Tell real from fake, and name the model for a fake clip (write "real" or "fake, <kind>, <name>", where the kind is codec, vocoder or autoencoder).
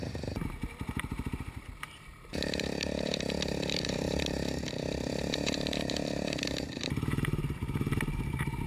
fake, vocoder, BigVGAN v2